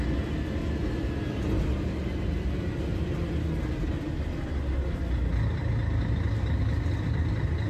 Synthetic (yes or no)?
no